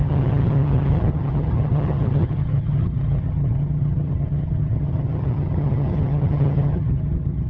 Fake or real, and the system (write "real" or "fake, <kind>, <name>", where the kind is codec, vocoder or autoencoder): fake, vocoder, HiFi-GAN